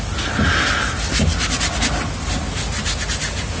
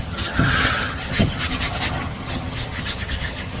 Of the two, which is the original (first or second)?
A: first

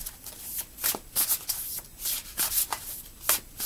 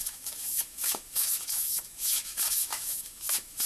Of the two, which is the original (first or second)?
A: first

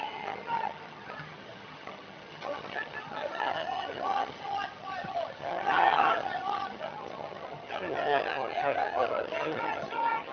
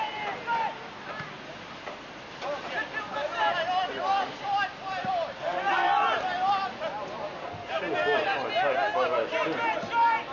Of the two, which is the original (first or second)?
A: second